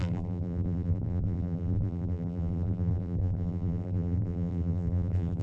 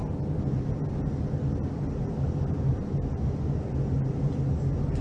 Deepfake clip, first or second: first